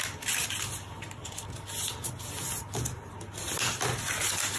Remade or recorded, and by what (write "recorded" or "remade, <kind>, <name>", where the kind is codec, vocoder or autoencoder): recorded